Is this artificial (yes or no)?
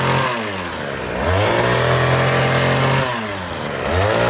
no